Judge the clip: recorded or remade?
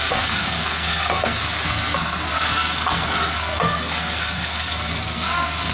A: remade